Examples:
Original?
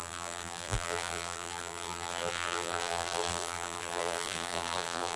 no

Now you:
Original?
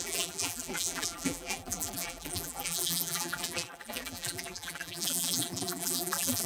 no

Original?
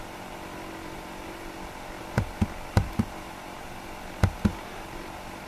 no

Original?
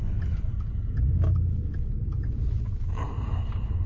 no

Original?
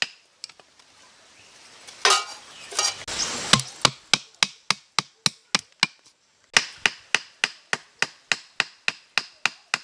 yes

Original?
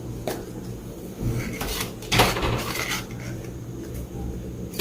yes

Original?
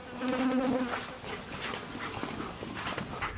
yes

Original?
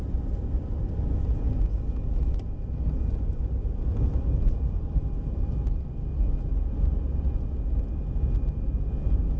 yes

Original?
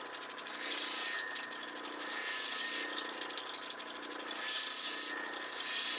yes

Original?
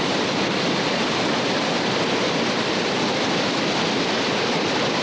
no